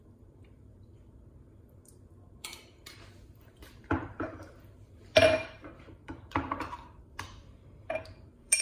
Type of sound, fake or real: fake